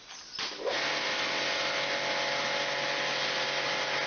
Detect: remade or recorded recorded